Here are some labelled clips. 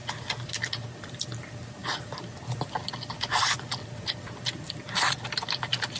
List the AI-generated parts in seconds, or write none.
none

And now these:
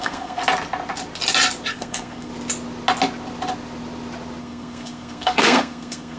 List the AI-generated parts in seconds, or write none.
0.0-0.4 (codec, SNAC); 1.7-2.3; 4.4-6.2

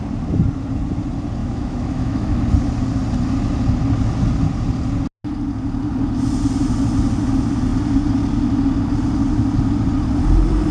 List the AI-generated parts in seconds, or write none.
1.4-2.4 (autoencoder, DAC-VAE)

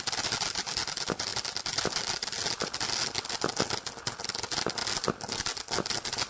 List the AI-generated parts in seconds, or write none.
none

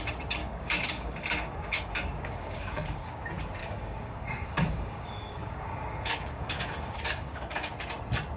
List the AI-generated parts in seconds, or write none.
0.4-3.2 (codec, DAC); 3.6-7.7

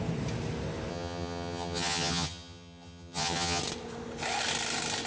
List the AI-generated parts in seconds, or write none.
0.9-3.6 (vocoder, HiFi-GAN)